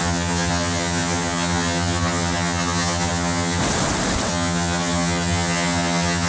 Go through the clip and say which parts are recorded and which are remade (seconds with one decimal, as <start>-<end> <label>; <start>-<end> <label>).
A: 0.0-3.6 remade; 3.6-4.3 recorded; 4.3-6.3 remade

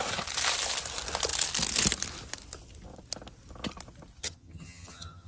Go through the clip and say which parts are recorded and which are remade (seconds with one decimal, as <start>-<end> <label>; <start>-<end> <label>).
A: 0.0-4.2 recorded; 4.2-5.3 remade

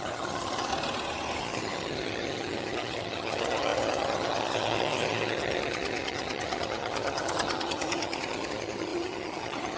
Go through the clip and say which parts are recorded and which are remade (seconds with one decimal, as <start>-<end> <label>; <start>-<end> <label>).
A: 0.0-0.7 remade; 0.7-1.4 recorded; 1.4-9.8 remade

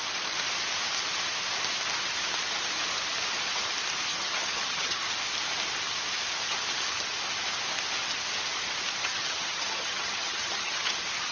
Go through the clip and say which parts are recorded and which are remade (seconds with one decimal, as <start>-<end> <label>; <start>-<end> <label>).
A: 0.0-4.1 recorded; 4.1-5.0 remade; 5.0-9.0 recorded; 9.0-10.9 remade; 10.9-11.3 recorded